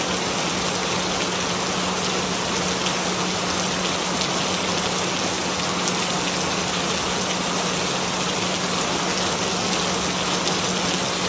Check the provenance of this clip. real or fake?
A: real